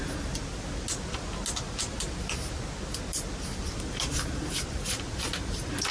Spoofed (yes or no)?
no